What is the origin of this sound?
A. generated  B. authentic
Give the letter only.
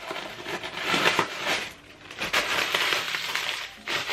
A